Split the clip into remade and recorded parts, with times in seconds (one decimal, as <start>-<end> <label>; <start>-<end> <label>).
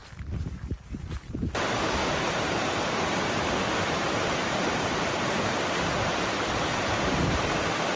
0.0-2.0 recorded; 2.0-5.7 remade; 5.7-8.0 recorded